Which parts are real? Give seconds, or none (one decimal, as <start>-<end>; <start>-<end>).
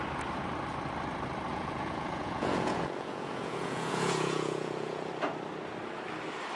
0.0-1.5; 5.1-6.6